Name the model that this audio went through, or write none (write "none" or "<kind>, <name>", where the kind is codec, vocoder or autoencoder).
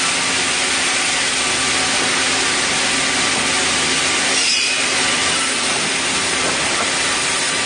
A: none